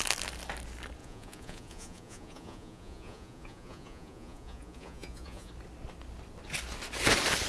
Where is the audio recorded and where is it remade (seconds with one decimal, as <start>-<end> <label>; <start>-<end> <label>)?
0.0-1.0 recorded; 1.0-5.5 remade; 5.5-7.5 recorded